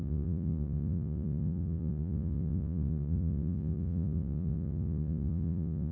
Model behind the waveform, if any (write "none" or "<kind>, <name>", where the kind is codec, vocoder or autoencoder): vocoder, Vocos